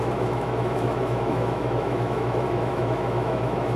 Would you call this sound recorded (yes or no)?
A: no